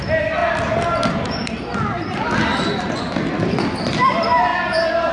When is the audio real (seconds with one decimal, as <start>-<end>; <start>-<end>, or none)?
0.0-5.1